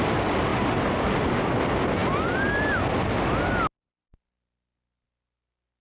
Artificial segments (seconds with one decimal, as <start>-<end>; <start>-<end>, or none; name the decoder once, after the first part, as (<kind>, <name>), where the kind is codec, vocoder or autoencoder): none